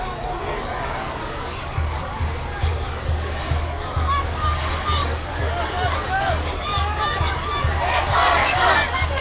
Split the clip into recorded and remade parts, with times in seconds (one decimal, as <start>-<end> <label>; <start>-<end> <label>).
0.0-9.2 remade